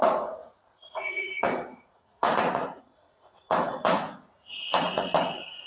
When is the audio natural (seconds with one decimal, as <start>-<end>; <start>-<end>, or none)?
none